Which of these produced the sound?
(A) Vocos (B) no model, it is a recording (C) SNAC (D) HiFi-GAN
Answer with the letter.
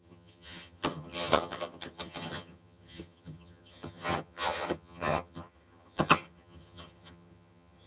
D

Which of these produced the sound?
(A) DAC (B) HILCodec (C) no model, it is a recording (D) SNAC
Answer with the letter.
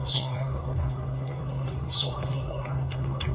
D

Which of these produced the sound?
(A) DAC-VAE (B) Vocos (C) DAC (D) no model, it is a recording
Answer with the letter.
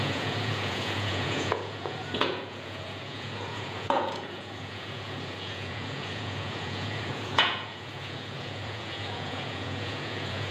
B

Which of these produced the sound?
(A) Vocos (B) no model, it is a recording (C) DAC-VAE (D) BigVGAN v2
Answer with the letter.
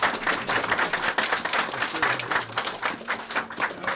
B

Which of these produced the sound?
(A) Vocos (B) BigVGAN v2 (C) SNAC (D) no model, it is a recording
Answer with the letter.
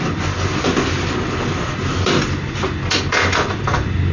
D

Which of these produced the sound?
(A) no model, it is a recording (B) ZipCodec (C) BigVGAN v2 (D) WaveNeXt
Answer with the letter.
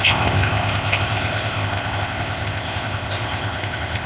B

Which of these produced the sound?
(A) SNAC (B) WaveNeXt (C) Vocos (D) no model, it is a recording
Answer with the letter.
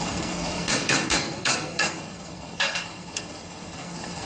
A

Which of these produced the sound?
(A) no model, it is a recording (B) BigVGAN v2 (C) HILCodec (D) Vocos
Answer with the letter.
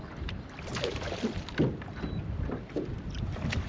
B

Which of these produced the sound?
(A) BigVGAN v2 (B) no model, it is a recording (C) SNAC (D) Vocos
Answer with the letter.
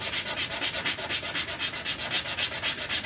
B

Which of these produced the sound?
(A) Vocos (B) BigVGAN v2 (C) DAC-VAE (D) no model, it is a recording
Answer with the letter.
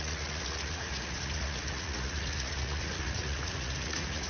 A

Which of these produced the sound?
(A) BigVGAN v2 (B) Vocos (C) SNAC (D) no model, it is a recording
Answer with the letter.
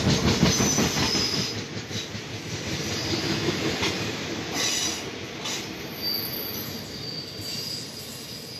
D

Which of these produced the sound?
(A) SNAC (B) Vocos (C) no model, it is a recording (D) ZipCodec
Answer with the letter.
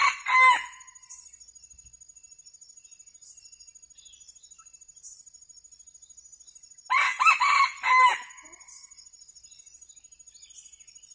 C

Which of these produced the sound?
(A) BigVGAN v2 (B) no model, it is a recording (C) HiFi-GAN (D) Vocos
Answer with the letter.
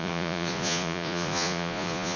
D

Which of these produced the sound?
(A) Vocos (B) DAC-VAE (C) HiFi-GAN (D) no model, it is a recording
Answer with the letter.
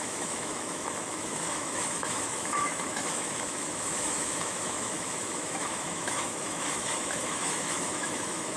B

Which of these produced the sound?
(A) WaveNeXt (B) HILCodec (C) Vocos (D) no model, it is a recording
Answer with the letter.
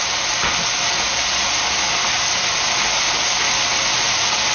D